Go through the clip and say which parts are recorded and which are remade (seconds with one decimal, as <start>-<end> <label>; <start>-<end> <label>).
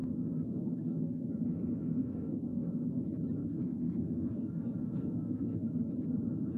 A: 0.0-1.3 remade; 1.3-2.0 recorded; 2.0-3.0 remade; 3.0-3.4 recorded; 3.4-5.8 remade; 5.8-6.6 recorded